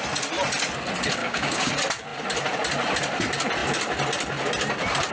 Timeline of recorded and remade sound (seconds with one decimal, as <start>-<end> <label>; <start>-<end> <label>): 0.0-1.2 recorded; 1.2-1.7 remade; 1.7-5.1 recorded